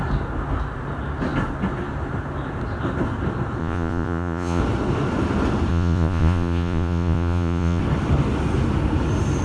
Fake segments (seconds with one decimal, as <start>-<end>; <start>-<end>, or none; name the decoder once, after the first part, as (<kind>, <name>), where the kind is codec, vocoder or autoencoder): 3.6-4.6 (vocoder, Vocos); 5.7-7.8